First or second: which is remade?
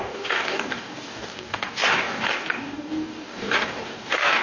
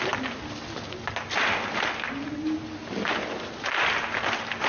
first